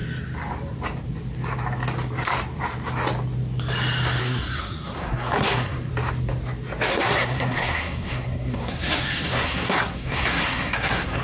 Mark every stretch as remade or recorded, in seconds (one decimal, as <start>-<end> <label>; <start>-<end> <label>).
0.0-4.2 recorded; 4.2-5.9 remade; 5.9-6.9 recorded; 6.9-11.2 remade